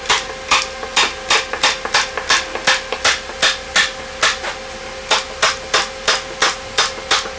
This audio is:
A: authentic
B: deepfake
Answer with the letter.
A